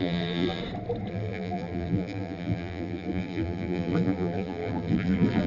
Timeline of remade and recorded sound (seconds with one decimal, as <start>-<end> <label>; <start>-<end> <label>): 0.0-0.6 remade; 0.6-1.1 recorded; 1.1-5.5 remade

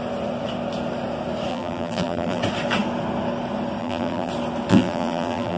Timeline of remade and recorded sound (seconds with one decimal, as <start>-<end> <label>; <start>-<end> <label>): 0.0-1.5 recorded; 1.5-2.4 remade; 2.4-3.8 recorded; 3.8-4.3 remade; 4.3-4.7 recorded; 4.7-5.6 remade

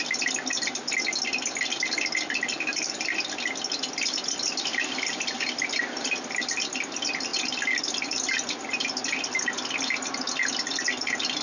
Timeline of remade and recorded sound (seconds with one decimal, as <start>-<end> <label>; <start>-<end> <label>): 0.0-2.7 recorded; 2.7-3.2 remade; 3.2-11.4 recorded

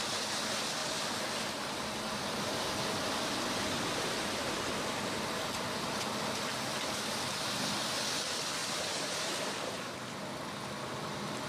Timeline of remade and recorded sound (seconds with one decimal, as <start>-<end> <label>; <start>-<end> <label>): 0.0-8.6 recorded; 8.6-9.9 remade; 9.9-11.5 recorded

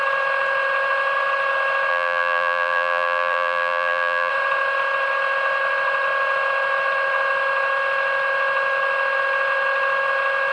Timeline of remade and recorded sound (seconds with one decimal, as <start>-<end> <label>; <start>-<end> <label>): 0.0-1.9 recorded; 1.9-4.3 remade; 4.3-10.5 recorded

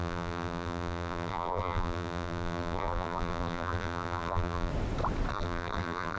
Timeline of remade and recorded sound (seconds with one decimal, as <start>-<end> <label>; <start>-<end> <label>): 0.0-4.7 remade; 4.7-5.3 recorded; 5.3-6.2 remade

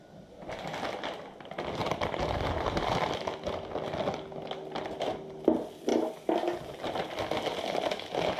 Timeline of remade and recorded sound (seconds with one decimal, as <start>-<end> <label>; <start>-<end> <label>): 0.0-1.8 recorded; 1.8-3.1 remade; 3.1-8.4 recorded

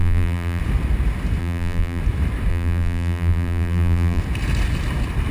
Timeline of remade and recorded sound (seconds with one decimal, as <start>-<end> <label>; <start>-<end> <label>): 0.0-0.6 remade; 0.6-1.4 recorded; 1.4-2.0 remade; 2.0-2.5 recorded; 2.5-4.2 remade; 4.2-5.3 recorded